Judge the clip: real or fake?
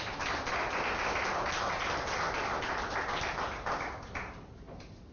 real